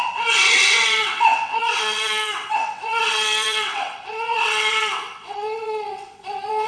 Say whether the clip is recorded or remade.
remade